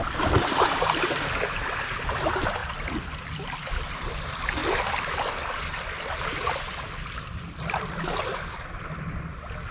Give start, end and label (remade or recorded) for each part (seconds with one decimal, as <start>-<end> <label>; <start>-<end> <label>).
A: 0.0-9.7 recorded